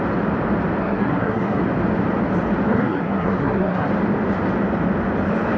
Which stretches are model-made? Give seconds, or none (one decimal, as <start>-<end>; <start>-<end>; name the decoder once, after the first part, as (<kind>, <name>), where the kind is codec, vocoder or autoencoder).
0.8-1.6 (codec, SNAC); 2.7-3.9